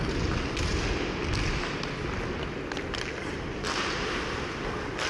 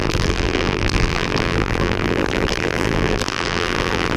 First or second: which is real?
first